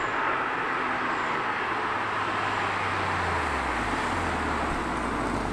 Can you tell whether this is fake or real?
real